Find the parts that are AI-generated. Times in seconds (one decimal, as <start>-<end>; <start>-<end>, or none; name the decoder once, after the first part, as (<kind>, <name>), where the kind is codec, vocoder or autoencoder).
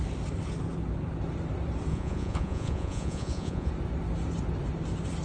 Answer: 1.9-3.7 (vocoder, Vocos)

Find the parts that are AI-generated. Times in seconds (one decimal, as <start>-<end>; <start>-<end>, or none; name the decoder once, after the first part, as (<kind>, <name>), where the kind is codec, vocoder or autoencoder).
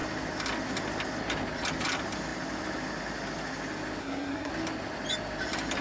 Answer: 4.0-4.5 (codec, SNAC)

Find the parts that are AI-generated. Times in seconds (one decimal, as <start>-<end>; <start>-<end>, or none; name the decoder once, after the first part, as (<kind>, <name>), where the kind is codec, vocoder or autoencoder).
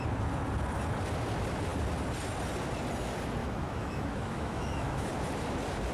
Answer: 3.4-5.1 (autoencoder, DAC-VAE)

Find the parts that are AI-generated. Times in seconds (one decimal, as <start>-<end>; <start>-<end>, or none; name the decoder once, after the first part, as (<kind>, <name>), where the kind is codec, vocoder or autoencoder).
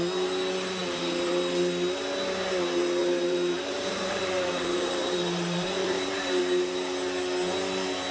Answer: 0.8-1.3 (vocoder, BigVGAN v2); 3.0-6.4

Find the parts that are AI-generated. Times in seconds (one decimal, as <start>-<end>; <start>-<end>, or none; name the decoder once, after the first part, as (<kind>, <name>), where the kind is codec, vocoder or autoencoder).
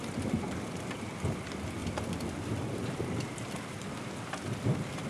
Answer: none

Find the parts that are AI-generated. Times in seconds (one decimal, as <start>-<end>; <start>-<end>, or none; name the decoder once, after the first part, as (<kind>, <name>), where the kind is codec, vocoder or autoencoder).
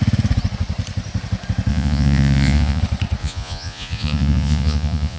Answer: 1.7-2.8 (vocoder, Vocos); 3.2-5.2